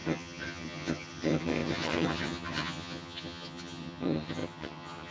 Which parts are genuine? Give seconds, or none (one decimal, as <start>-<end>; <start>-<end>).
none